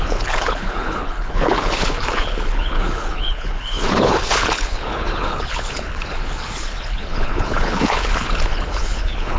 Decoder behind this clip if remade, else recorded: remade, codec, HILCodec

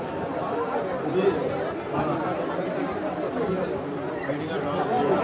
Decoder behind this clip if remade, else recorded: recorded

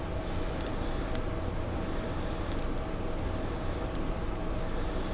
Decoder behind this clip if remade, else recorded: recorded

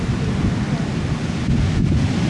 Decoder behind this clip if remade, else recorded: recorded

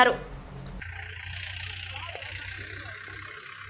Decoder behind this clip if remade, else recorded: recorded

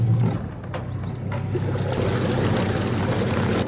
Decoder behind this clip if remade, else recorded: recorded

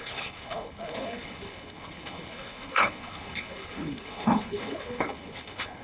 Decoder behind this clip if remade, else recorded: remade, codec, HILCodec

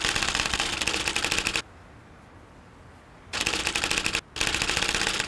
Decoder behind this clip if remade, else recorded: recorded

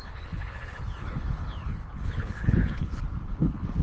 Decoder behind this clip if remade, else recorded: remade, codec, HILCodec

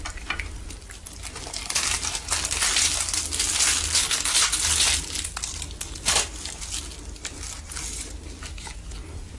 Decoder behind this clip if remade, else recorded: recorded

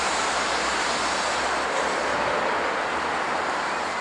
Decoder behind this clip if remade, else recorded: recorded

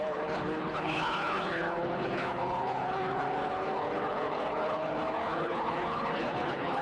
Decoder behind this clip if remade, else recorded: remade, codec, HILCodec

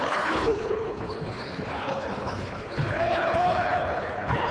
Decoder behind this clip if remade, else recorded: remade, codec, HILCodec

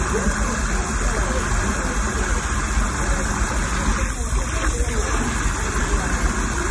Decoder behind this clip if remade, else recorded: recorded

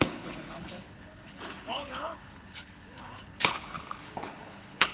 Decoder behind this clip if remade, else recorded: remade, codec, HILCodec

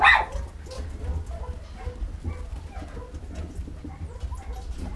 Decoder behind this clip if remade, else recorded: recorded